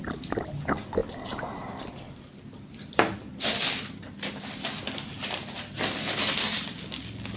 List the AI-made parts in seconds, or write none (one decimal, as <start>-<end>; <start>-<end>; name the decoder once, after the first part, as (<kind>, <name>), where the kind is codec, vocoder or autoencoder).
none